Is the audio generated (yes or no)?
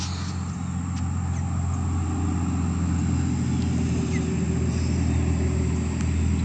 no